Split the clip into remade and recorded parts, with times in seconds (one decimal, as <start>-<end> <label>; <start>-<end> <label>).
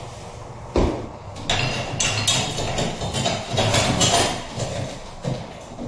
0.0-5.9 recorded